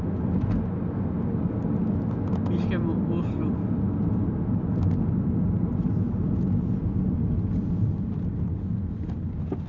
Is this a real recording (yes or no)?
yes